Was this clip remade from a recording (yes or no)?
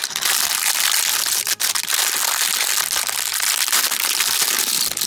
no